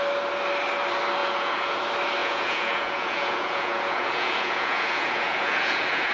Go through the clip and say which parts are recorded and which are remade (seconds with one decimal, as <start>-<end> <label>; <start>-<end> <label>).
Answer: 0.0-1.2 recorded; 1.2-1.8 remade; 1.8-2.2 recorded; 2.2-6.1 remade